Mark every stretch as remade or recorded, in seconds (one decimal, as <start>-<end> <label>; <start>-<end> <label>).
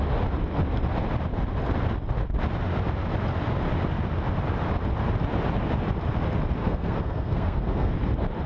0.0-6.6 recorded; 6.6-7.9 remade; 7.9-8.5 recorded